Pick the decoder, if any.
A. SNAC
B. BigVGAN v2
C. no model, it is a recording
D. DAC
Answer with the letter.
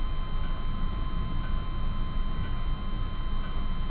C